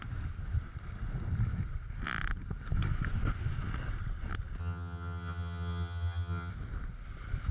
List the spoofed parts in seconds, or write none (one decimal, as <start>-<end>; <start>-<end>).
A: 4.6-6.5